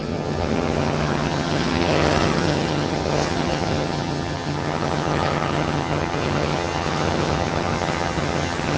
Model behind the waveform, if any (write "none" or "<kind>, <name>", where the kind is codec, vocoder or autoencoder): vocoder, HiFi-GAN